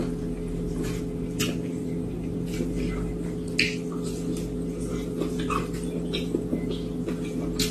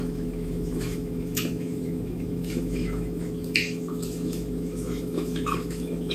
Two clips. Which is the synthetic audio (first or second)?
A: second